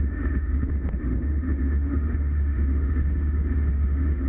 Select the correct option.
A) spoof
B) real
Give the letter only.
A